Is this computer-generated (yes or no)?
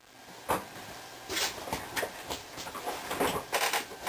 no